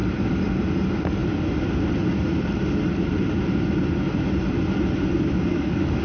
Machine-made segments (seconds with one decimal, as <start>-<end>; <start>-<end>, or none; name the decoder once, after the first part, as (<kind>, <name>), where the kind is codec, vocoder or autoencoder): 5.5-6.0 (codec, DAC)

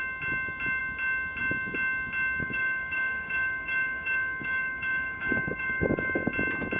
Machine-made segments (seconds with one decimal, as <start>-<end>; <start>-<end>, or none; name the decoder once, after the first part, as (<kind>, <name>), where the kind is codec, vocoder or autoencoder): 2.4-6.3 (codec, DAC)

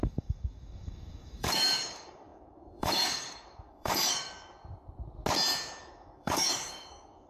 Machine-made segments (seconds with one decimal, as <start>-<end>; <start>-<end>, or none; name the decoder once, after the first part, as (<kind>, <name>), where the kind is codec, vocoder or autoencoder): 0.0-4.6 (codec, DAC); 5.8-7.3

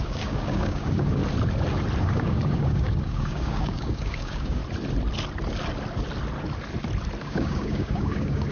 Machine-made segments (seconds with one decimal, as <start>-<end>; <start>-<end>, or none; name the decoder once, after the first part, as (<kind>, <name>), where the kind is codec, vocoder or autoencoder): 0.0-1.2 (codec, DAC); 2.0-4.6; 7.2-8.5

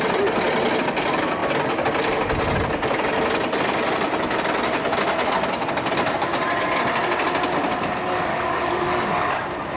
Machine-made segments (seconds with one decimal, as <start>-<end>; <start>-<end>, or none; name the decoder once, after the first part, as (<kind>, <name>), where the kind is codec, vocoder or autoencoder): 8.3-9.1 (codec, DAC)

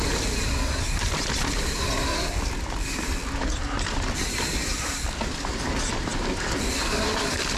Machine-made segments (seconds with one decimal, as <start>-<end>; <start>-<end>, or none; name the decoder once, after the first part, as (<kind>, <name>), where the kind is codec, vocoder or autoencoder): none

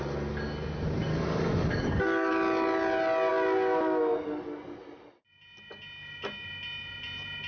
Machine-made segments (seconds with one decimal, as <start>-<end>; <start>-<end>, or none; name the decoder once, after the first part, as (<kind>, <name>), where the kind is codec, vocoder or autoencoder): 1.1-2.3 (codec, DAC)